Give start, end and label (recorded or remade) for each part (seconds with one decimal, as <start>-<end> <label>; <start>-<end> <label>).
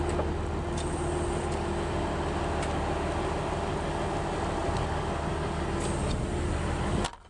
0.0-7.3 recorded